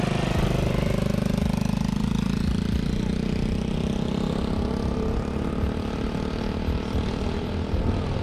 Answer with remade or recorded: recorded